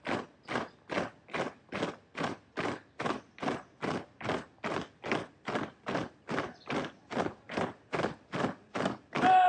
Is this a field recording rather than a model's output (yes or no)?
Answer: yes